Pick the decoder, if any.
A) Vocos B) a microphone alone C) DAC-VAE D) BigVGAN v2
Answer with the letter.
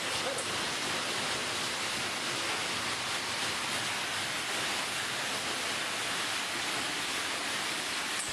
B